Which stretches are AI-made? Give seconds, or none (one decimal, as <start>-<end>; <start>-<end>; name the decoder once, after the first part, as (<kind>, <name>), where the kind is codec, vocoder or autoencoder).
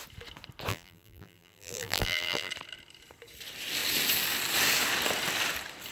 0.7-2.5 (vocoder, BigVGAN v2)